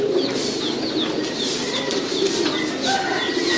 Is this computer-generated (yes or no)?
no